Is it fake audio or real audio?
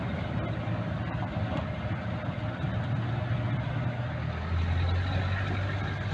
real